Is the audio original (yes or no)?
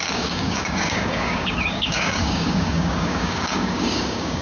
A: no